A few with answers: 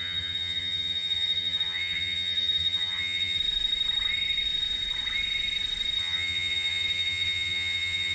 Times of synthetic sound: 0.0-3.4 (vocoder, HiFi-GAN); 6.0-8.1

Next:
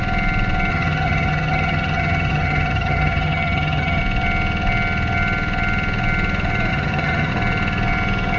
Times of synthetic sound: 0.7-4.0 (vocoder, HiFi-GAN); 6.7-7.3

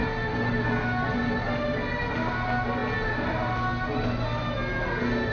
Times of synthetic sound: none

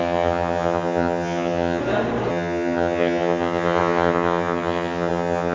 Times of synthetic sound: 0.0-1.8 (vocoder, HiFi-GAN); 2.3-5.5

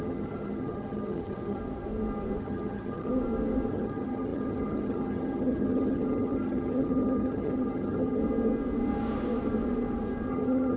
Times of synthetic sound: 0.0-1.6 (vocoder, HiFi-GAN); 2.4-3.1; 3.7-8.2; 10.3-10.8

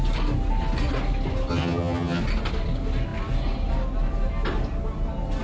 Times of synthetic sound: 1.5-2.2 (vocoder, HiFi-GAN)

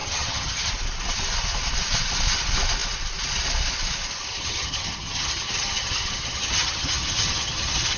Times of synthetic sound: 0.0-0.7 (vocoder, HiFi-GAN); 4.3-8.0